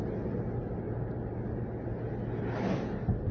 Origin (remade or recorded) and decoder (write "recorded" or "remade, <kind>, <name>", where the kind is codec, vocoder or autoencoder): recorded